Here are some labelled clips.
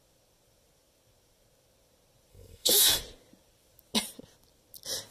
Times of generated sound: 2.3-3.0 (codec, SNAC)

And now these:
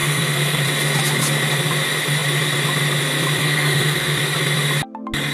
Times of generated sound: 0.0-0.6 (codec, SNAC); 3.4-4.2